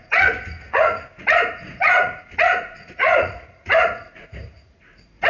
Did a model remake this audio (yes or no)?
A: yes